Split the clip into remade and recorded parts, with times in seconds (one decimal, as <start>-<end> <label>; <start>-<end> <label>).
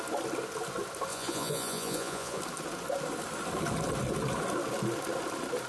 0.0-1.1 recorded; 1.1-2.4 remade; 2.4-5.7 recorded